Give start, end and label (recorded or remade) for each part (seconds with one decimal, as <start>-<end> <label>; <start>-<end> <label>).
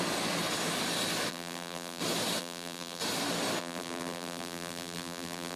0.0-1.3 recorded; 1.3-2.0 remade; 2.0-2.4 recorded; 2.4-3.0 remade; 3.0-3.6 recorded; 3.6-5.6 remade